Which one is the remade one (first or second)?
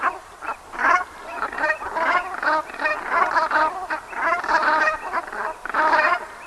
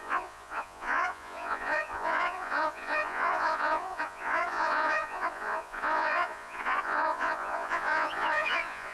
second